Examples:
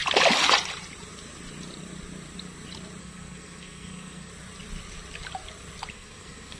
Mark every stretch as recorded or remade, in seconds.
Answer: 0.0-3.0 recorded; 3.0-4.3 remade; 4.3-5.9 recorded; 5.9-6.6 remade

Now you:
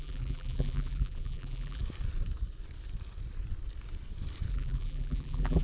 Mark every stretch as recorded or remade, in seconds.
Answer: 0.0-1.8 remade; 1.8-4.5 recorded; 4.5-5.6 remade

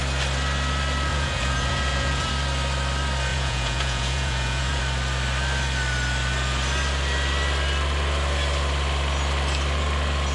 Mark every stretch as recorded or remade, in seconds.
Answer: 0.0-1.1 recorded; 1.1-2.3 remade; 2.3-3.3 recorded; 3.3-4.8 remade; 4.8-10.3 recorded

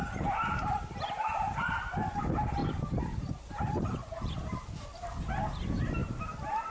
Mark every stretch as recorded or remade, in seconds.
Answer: 0.0-1.3 recorded; 1.3-1.9 remade; 1.9-2.6 recorded; 2.6-4.3 remade; 4.3-6.7 recorded

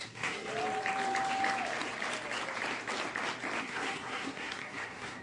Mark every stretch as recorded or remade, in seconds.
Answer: 0.0-0.5 remade; 0.5-3.6 recorded; 3.6-5.2 remade

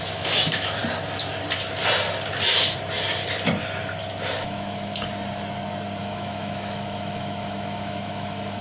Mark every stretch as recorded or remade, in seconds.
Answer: 0.0-0.8 remade; 0.8-4.3 recorded; 4.3-4.9 remade; 4.9-6.0 recorded; 6.0-8.6 remade

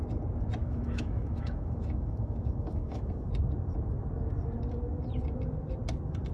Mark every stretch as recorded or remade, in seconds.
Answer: 0.0-0.6 recorded; 0.6-3.3 remade; 3.3-6.3 recorded

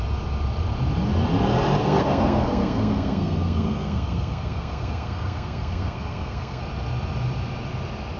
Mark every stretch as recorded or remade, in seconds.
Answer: 0.0-1.8 recorded; 1.8-6.6 remade; 6.6-8.2 recorded